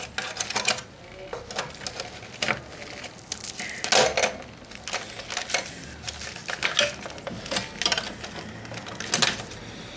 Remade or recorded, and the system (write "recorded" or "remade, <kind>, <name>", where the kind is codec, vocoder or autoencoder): recorded